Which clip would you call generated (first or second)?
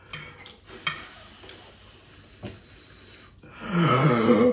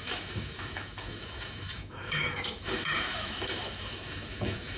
second